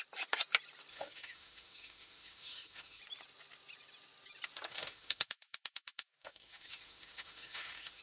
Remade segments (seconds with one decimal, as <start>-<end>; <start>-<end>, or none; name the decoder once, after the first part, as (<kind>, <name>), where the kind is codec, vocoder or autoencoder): 0.9-3.0 (autoencoder, DAC-VAE); 4.7-8.0